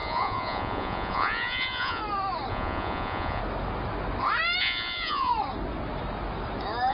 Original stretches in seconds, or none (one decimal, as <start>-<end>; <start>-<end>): 2.0-2.5; 3.4-4.6; 5.3-6.9